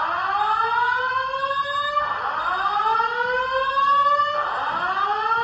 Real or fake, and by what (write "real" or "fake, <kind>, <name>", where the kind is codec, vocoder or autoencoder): real